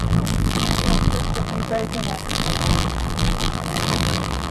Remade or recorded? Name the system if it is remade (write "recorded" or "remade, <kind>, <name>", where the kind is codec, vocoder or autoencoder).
remade, vocoder, BigVGAN v2